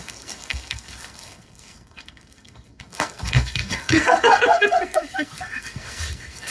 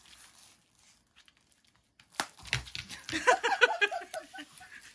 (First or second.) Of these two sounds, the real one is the second